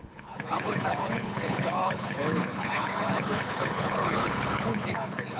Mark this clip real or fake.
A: fake